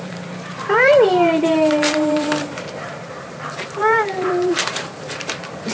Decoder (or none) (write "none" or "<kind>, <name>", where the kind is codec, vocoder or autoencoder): vocoder, BigVGAN v2